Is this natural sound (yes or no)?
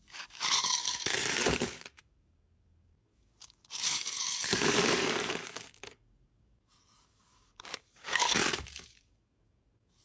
no